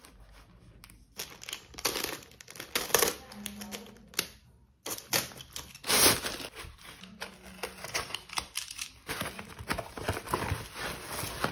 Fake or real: real